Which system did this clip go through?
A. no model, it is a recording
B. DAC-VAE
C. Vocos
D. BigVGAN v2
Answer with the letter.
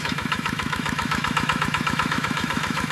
B